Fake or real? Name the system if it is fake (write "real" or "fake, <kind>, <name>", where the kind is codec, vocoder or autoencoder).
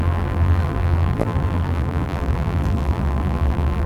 fake, vocoder, BigVGAN v2